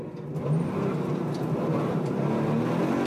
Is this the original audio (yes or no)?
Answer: yes